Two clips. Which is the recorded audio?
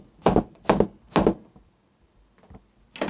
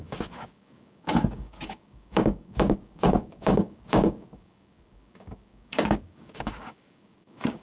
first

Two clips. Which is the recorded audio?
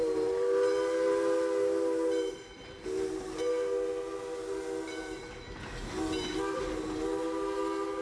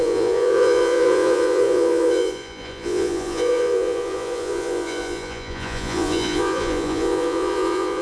first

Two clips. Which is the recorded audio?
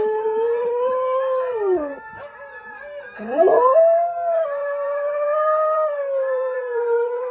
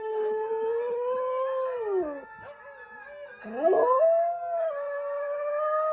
second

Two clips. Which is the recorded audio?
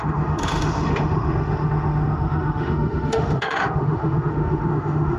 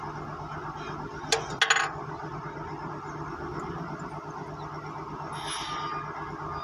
second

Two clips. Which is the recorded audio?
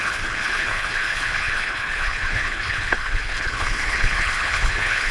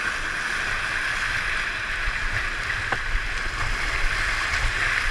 second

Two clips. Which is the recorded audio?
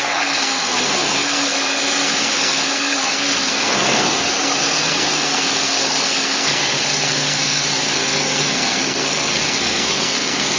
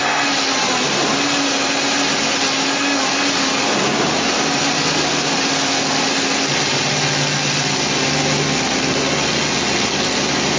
second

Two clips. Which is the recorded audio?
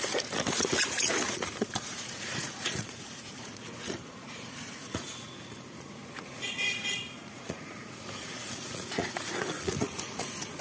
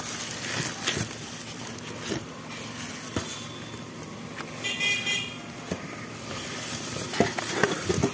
second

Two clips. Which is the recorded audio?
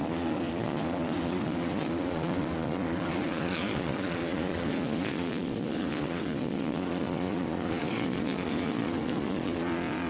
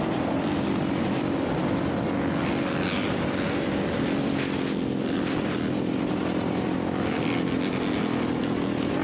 second